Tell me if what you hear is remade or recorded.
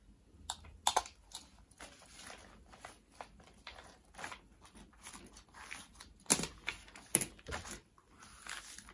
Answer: recorded